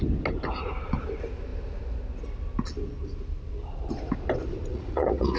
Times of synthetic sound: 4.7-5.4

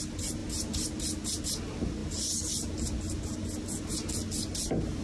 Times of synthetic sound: none

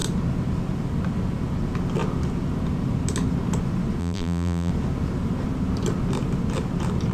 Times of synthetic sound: 4.0-4.7